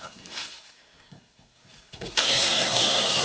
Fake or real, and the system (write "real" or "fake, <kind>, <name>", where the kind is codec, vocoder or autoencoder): fake, codec, SNAC